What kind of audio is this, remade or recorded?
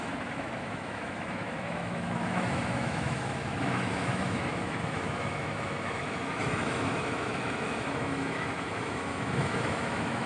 remade